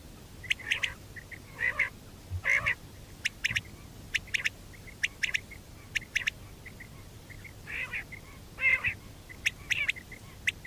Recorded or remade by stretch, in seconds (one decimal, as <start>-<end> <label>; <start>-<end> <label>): 0.0-10.7 recorded